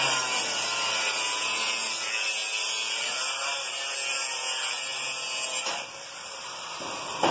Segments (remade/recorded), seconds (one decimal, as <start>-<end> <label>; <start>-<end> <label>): 0.0-7.3 recorded